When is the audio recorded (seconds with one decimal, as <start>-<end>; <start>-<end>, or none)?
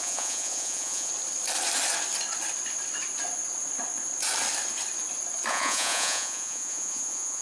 1.1-5.5